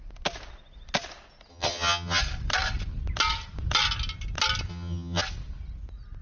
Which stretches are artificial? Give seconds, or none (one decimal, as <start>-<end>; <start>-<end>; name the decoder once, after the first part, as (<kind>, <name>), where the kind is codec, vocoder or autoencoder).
1.5-2.2 (vocoder, HiFi-GAN); 4.7-5.2